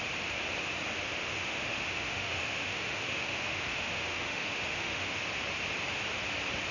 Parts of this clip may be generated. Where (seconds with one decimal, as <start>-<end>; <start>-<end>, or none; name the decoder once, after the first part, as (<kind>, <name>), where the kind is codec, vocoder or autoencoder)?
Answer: 1.2-5.2 (autoencoder, DAC-VAE)